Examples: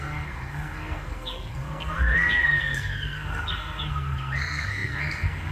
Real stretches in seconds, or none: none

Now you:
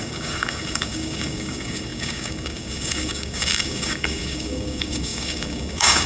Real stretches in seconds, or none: none

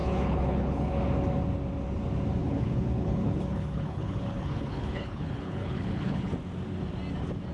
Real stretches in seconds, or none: 0.9-2.4; 6.3-7.5

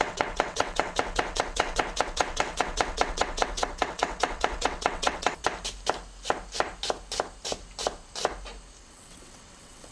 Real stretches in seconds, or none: 5.4-8.8

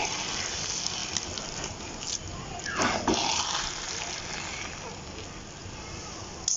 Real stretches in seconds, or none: 0.0-6.6

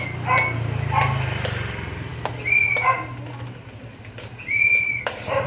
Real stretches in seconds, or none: 0.0-5.5